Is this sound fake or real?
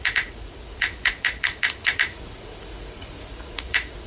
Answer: fake